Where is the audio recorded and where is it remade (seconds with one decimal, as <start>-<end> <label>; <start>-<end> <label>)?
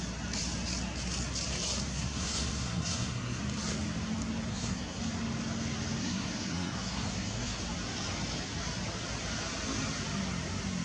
0.0-1.9 recorded; 1.9-3.4 remade; 3.4-4.5 recorded; 4.5-5.0 remade; 5.0-6.0 recorded; 6.0-7.6 remade; 7.6-10.8 recorded